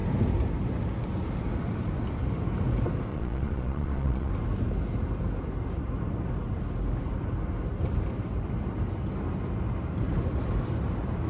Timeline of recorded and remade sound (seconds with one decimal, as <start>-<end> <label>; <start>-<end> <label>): 0.0-3.1 recorded; 3.1-4.3 remade; 4.3-11.3 recorded